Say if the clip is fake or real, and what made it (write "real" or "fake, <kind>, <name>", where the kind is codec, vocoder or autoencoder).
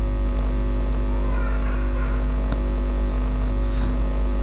real